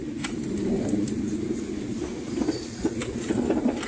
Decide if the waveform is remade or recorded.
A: recorded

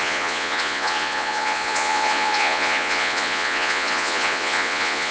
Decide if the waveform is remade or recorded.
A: remade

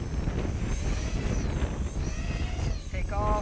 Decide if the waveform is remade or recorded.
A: recorded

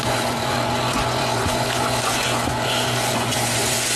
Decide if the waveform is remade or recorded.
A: remade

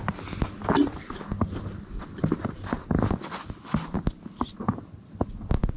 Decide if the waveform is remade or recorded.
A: recorded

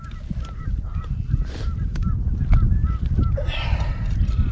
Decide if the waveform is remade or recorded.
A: recorded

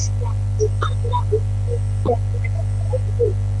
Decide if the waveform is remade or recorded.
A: recorded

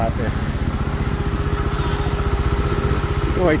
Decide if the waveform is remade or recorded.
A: recorded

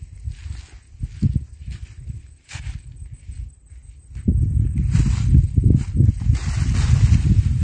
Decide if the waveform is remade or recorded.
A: recorded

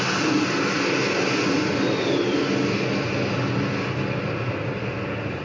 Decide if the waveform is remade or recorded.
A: recorded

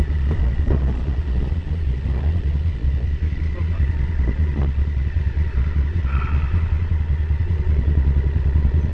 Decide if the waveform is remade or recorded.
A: remade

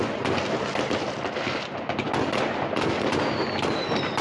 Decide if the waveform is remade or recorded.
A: recorded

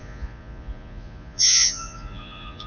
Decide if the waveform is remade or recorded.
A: remade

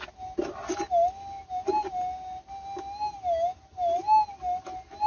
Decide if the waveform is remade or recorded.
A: recorded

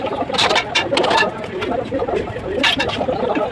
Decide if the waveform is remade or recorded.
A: recorded